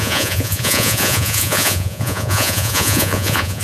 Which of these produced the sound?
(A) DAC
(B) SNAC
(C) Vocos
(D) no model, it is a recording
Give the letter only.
C